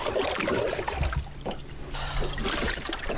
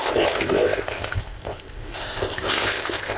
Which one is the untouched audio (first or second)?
first